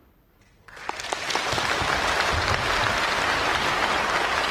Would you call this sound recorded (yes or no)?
yes